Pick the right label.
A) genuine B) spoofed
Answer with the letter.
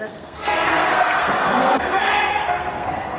B